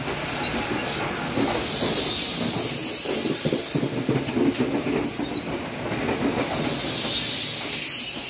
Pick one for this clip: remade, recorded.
recorded